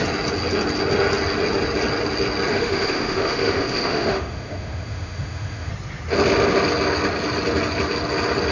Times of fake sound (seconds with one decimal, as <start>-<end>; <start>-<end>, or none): 2.5-5.7